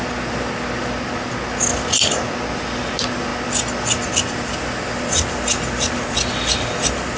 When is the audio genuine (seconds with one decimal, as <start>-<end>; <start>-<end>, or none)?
0.0-7.2